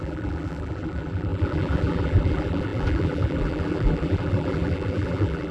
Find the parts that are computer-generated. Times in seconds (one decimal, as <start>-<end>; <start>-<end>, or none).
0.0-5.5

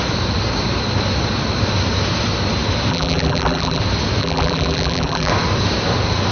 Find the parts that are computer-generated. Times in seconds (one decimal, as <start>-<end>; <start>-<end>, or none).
2.9-3.8; 4.2-5.3

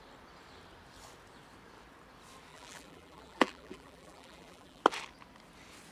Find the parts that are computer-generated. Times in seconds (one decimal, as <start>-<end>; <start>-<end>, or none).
2.5-4.8